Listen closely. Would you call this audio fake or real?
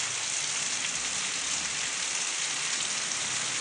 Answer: real